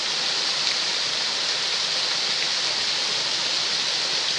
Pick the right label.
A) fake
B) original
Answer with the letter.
B